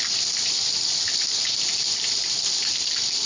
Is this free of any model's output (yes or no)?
yes